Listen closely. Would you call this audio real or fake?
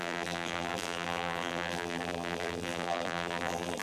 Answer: fake